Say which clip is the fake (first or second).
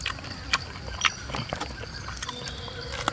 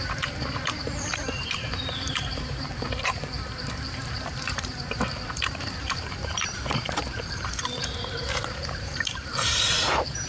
second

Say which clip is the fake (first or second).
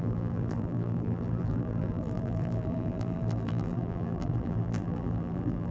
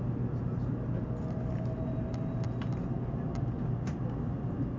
first